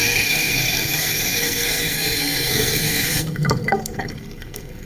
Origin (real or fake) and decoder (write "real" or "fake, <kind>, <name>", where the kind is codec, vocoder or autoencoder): fake, codec, SNAC